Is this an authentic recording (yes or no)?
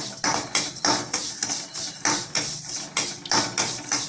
yes